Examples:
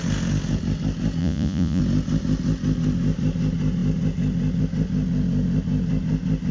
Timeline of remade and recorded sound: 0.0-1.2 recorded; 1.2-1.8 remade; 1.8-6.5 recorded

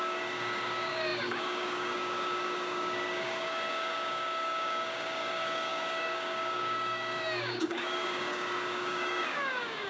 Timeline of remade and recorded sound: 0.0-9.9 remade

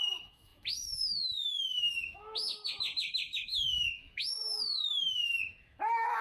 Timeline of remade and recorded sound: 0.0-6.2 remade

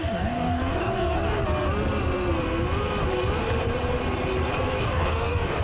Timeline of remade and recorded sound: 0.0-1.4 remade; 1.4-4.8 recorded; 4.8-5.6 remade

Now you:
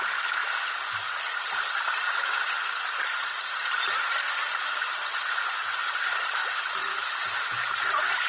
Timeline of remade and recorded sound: 0.0-0.4 recorded; 0.4-5.3 remade; 5.3-6.4 recorded; 6.4-6.9 remade; 6.9-8.3 recorded

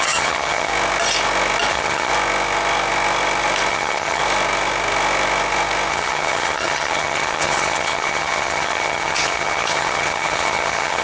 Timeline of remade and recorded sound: 0.0-0.7 remade; 0.7-1.7 recorded; 1.7-2.1 remade; 2.1-3.7 recorded; 3.7-4.2 remade; 4.2-5.9 recorded; 5.9-11.0 remade

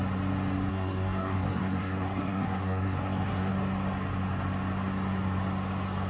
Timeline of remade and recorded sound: 0.0-0.7 recorded; 0.7-3.5 remade; 3.5-6.1 recorded

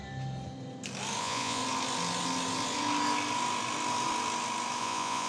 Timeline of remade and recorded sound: 0.0-1.2 recorded; 1.2-1.6 remade; 1.6-4.8 recorded; 4.8-5.3 remade